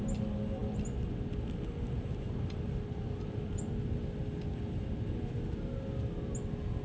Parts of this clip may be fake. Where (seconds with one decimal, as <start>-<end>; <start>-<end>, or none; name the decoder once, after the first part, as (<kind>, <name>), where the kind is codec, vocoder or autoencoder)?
none